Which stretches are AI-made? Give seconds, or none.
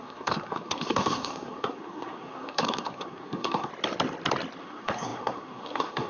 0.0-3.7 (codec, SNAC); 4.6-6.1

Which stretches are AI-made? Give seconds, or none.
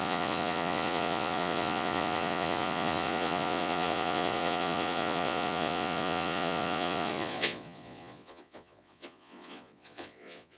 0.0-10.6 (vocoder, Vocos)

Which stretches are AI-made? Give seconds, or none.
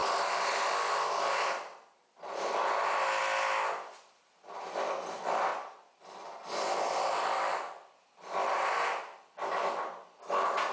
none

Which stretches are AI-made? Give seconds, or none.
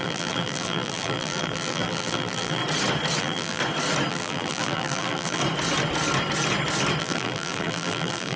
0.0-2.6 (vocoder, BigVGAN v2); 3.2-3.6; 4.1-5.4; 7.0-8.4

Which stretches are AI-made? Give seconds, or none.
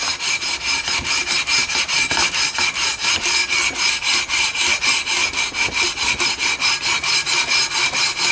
none